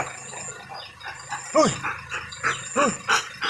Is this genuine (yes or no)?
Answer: yes